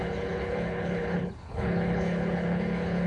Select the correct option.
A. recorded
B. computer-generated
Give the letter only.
B